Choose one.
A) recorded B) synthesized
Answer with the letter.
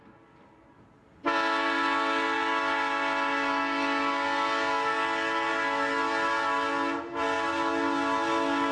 A